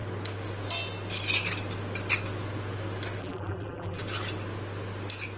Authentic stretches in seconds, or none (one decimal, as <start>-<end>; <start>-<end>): 0.0-3.2; 4.0-5.4